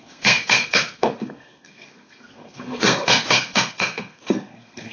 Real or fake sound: fake